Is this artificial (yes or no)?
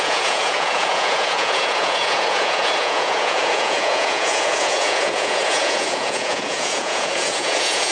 yes